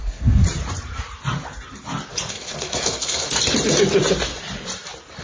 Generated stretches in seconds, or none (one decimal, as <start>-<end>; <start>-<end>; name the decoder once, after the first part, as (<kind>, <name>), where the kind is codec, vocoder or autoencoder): 0.0-0.4 (codec, SNAC); 2.3-3.4